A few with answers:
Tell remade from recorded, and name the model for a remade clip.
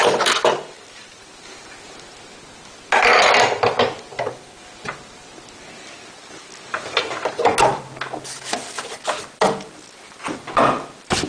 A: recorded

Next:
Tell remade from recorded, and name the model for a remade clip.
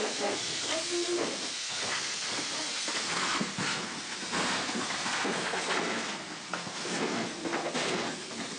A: remade, codec, SNAC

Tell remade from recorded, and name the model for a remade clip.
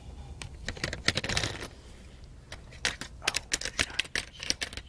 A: recorded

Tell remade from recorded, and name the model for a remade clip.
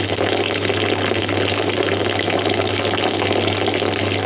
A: recorded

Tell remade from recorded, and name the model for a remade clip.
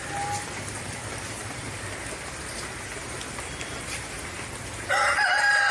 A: recorded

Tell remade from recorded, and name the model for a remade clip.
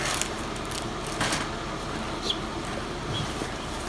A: recorded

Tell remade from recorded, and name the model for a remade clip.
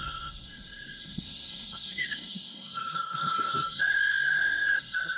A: remade, codec, SNAC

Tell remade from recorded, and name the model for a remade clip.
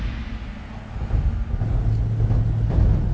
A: recorded